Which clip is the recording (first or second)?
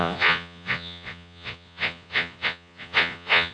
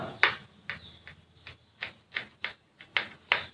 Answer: second